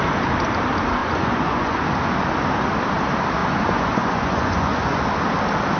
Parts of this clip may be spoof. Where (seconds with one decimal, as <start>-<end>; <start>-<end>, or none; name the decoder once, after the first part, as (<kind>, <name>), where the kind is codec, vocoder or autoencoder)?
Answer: 1.0-1.8 (vocoder, Vocos); 3.4-5.0